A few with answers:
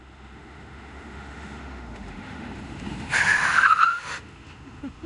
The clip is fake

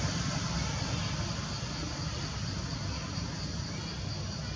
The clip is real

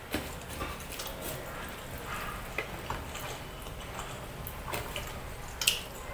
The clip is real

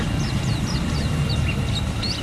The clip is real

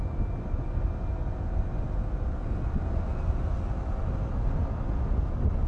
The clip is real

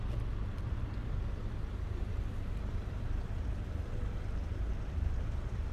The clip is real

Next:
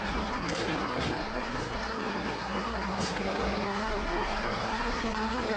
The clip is fake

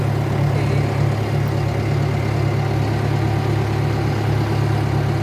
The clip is real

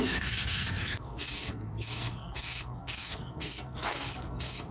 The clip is fake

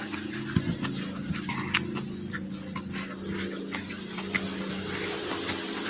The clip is real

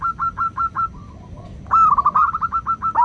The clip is real